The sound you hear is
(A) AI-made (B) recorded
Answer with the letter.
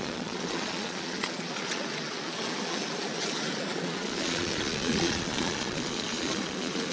A